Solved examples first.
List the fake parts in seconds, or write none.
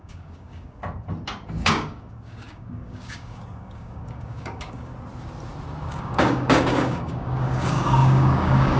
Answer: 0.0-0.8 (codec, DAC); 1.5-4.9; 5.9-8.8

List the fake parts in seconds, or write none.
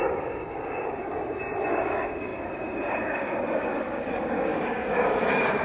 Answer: 0.0-1.1 (codec, DAC); 1.7-5.6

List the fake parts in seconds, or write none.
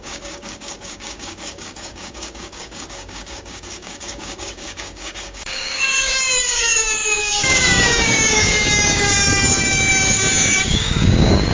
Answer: 0.0-11.5 (codec, DAC)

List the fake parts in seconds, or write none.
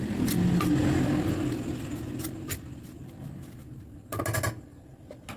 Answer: none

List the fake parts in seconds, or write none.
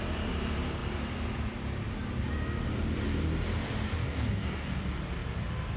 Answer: 4.0-4.8 (codec, DAC)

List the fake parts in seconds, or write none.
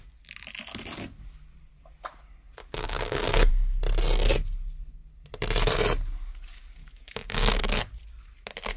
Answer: 2.6-3.5 (codec, DAC); 6.8-7.8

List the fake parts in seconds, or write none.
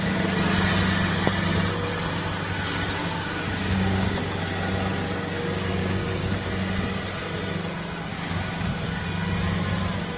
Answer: 3.0-4.2 (codec, DAC); 5.8-6.4; 8.1-8.7